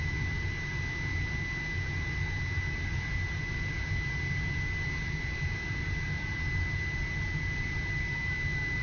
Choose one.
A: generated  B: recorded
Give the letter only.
B